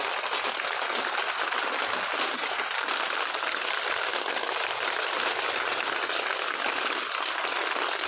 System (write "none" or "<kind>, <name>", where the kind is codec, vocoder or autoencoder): none